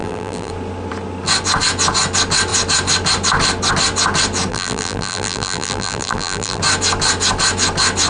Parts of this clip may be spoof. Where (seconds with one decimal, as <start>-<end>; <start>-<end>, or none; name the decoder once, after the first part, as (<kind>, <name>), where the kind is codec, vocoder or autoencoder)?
0.0-0.5 (vocoder, BigVGAN v2); 4.5-6.6